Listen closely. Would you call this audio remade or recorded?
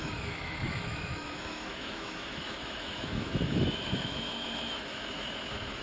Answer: remade